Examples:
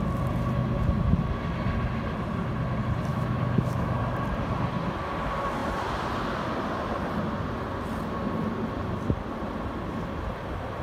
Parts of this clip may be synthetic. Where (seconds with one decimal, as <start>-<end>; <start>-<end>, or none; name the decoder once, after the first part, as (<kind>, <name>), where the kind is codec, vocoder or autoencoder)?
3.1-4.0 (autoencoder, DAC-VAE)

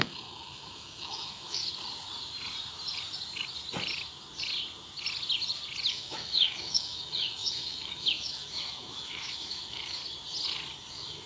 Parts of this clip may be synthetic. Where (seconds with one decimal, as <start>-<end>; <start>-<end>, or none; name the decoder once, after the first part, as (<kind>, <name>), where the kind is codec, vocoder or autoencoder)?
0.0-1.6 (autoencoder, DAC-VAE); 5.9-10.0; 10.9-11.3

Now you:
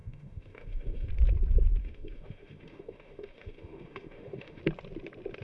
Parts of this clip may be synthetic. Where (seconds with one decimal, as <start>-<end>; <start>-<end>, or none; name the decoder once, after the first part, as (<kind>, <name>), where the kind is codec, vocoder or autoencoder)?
0.0-1.1 (autoencoder, DAC-VAE); 1.8-4.6

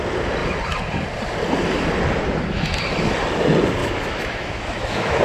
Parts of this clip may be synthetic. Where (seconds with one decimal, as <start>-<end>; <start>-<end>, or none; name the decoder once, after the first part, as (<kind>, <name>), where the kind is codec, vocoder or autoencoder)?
3.8-5.2 (autoencoder, DAC-VAE)